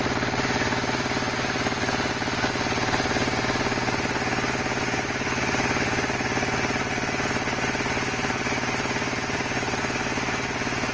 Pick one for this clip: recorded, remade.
recorded